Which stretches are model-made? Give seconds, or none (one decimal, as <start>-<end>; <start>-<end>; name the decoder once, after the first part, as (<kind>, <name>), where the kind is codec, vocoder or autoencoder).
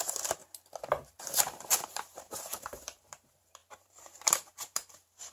0.0-0.4 (vocoder, BigVGAN v2); 1.2-5.3